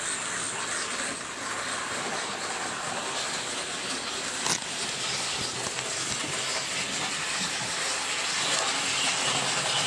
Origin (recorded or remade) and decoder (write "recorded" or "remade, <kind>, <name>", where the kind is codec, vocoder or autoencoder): recorded